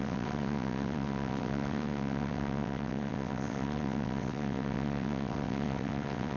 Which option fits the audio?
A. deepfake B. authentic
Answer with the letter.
A